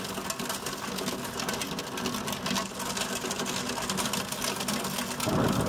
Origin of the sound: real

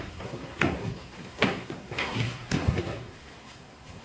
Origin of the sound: fake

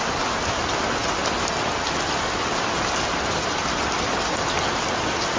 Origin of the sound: real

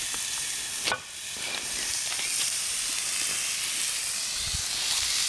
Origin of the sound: real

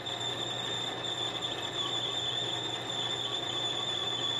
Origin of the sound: real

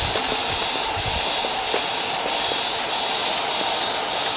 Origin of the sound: real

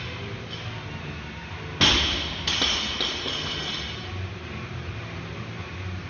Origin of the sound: real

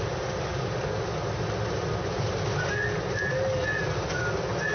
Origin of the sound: real